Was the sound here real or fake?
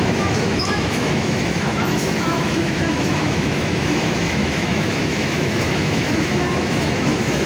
fake